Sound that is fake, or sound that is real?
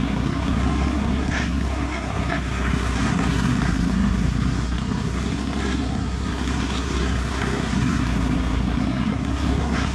fake